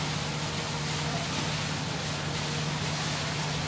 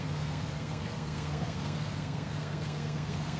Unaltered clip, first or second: first